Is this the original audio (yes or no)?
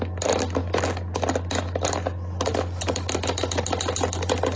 yes